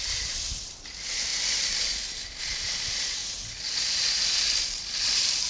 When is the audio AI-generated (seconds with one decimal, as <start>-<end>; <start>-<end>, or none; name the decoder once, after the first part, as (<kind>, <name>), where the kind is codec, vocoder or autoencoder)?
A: 0.0-5.5 (vocoder, BigVGAN v2)